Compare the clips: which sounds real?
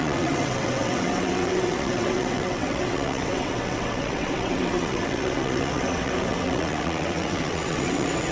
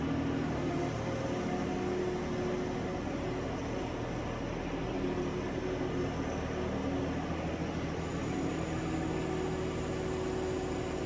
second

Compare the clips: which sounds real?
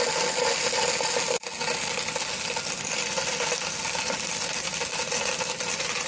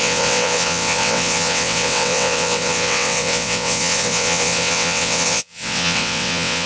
first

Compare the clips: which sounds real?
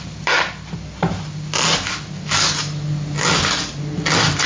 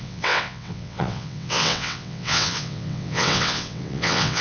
first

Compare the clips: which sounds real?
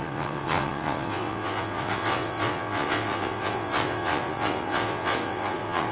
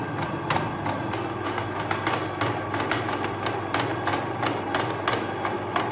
second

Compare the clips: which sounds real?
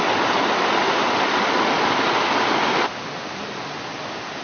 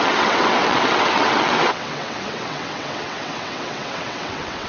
first